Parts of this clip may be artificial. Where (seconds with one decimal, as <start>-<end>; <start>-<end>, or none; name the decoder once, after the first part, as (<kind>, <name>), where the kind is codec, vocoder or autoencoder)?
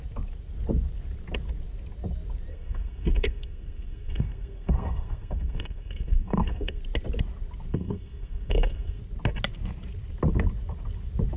2.5-6.8 (codec, SNAC); 7.7-9.0